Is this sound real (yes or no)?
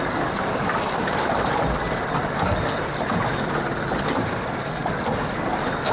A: no